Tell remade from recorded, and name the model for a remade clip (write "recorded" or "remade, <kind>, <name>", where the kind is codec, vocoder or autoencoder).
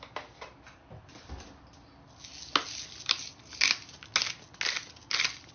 recorded